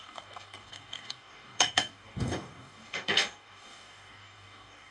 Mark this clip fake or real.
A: fake